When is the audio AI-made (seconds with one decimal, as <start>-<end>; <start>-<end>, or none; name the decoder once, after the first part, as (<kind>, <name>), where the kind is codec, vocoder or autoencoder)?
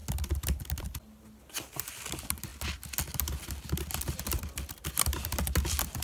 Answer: none